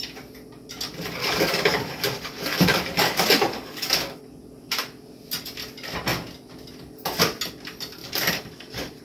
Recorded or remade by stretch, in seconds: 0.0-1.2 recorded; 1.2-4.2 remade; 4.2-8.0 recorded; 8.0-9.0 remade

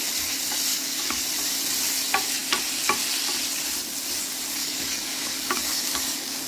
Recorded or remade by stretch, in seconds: 0.0-0.7 recorded; 0.7-1.2 remade; 1.2-4.6 recorded; 4.6-6.5 remade